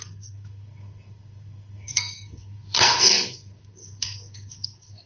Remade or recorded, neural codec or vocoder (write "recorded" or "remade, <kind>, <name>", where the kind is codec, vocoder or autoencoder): remade, codec, SNAC